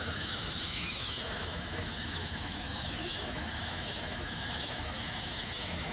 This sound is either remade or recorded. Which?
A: remade